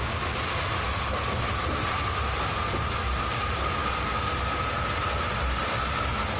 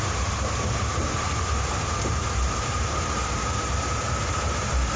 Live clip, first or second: first